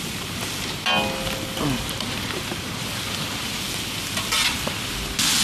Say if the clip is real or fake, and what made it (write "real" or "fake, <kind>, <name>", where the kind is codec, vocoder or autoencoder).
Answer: real